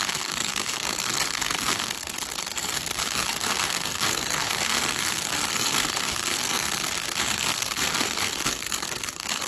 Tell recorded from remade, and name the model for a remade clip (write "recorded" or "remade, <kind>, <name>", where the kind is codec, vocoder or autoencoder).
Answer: remade, codec, SNAC